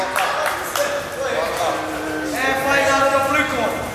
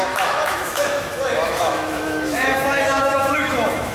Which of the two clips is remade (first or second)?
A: second